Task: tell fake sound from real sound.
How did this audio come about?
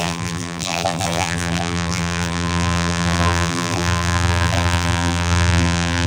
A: fake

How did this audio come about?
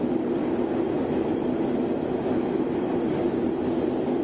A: real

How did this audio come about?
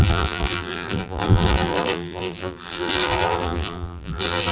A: fake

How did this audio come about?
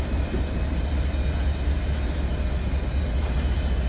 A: real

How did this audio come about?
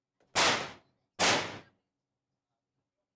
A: real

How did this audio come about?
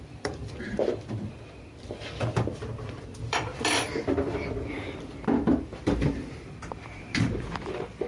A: fake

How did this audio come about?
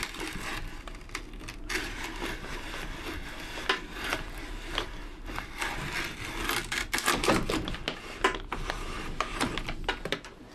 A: real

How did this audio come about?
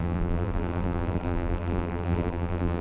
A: fake